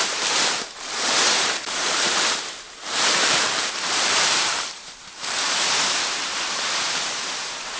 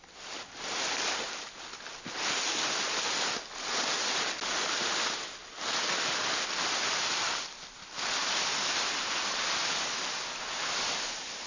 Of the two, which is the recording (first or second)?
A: second